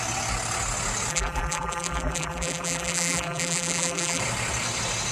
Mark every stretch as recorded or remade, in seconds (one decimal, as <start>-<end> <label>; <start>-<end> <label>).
0.0-1.1 recorded; 1.1-4.2 remade; 4.2-5.1 recorded